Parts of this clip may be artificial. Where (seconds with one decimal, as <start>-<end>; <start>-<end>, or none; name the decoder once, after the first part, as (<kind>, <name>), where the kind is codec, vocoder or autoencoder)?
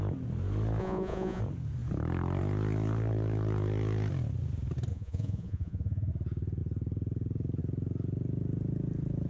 0.8-1.4 (vocoder, Vocos); 4.9-6.1